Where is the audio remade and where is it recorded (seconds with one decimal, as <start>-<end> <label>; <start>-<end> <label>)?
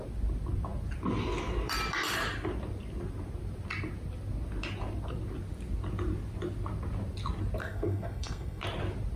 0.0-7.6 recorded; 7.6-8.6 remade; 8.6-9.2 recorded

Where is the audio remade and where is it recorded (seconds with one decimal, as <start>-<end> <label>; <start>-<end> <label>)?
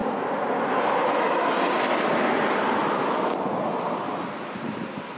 0.0-5.2 recorded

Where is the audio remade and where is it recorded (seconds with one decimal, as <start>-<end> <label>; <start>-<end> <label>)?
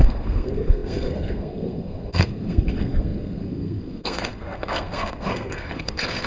0.0-6.3 remade